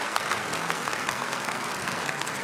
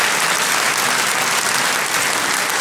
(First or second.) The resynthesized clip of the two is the first